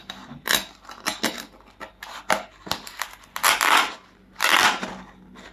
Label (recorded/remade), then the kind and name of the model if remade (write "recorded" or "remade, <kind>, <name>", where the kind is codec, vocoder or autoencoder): recorded